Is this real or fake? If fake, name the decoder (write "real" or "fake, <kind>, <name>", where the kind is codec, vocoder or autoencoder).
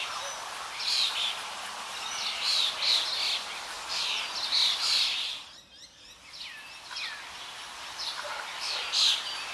real